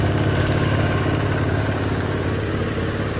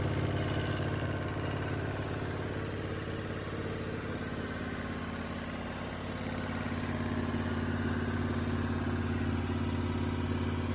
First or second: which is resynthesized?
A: first